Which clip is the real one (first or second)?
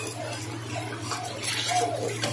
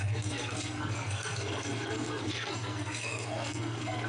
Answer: first